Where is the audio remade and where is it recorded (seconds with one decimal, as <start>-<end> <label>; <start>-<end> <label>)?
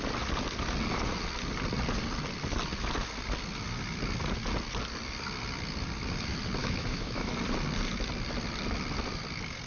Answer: 0.0-6.6 recorded; 6.6-7.3 remade; 7.3-9.7 recorded